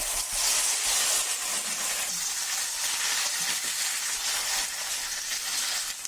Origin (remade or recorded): recorded